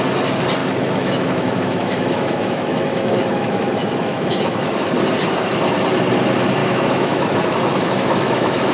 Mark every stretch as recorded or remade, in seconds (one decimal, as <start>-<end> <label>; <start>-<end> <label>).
0.0-0.6 recorded; 0.6-4.9 remade; 4.9-6.6 recorded; 6.6-8.7 remade